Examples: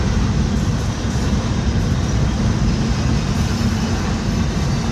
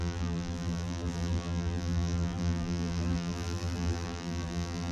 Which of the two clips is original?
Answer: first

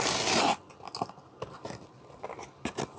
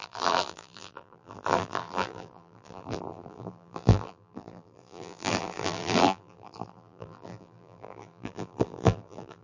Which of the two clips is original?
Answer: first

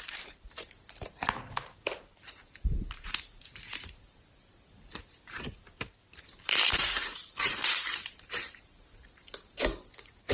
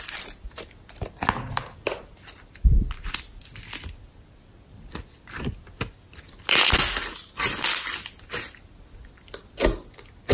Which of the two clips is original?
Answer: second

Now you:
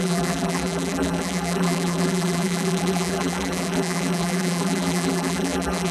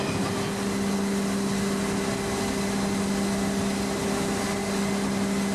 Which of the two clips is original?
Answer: second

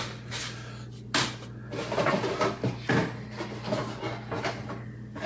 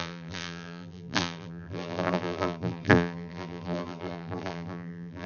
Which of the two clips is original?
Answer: first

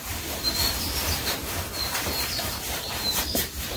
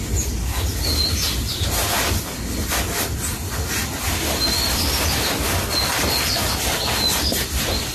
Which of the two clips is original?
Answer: second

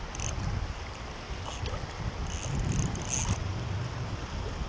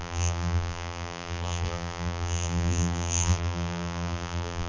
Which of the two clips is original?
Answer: first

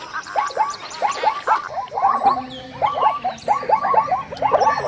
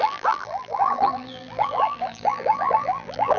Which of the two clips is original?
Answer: first